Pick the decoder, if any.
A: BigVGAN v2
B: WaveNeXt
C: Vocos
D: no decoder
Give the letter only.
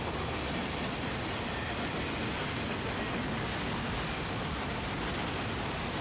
D